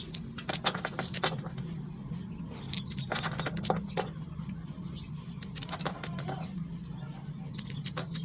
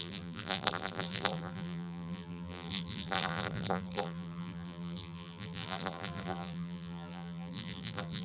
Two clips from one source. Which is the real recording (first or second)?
first